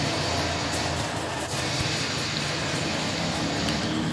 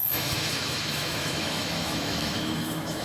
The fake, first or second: second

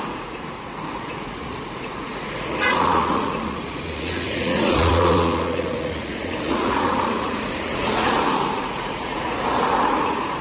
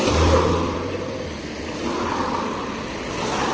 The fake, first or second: first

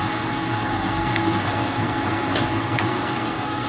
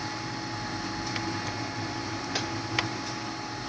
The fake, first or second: first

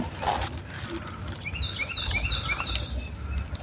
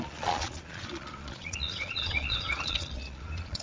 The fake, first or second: second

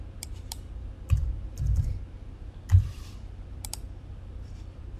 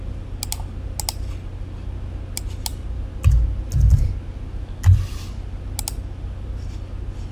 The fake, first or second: first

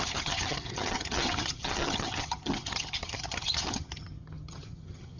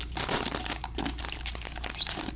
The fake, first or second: first